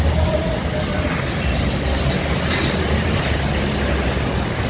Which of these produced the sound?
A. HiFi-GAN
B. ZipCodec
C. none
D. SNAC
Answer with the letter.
C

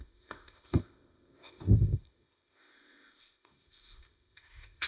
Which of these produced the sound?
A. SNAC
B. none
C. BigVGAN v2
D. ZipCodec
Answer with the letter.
D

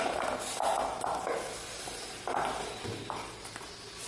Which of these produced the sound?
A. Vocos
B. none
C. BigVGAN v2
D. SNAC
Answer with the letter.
B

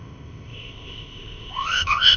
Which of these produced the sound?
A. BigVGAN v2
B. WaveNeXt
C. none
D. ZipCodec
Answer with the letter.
D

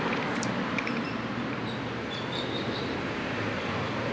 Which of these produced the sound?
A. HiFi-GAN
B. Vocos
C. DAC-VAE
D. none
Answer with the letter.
D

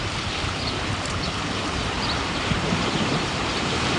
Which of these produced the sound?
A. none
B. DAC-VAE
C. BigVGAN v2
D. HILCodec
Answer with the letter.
C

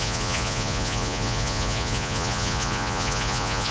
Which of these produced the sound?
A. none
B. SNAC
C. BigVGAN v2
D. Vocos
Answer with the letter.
D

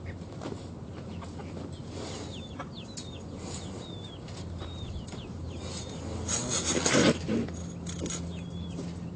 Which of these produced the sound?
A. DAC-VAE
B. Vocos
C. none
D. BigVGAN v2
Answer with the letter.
C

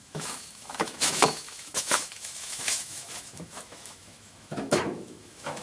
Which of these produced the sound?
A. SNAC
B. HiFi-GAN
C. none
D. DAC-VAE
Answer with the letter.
D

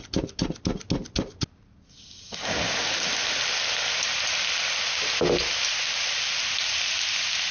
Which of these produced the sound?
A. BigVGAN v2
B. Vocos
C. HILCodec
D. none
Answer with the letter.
D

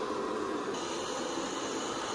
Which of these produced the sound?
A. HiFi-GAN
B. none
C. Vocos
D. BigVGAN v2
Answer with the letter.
B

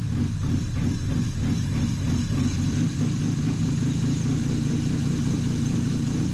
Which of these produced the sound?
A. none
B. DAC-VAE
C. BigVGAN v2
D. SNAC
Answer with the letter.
A